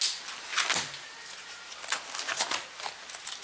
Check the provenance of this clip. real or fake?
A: real